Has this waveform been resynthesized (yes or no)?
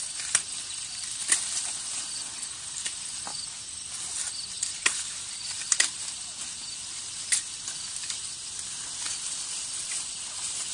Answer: no